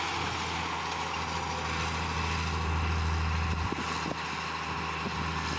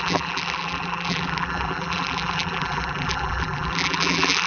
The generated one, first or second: second